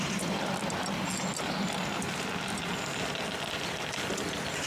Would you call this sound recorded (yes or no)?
yes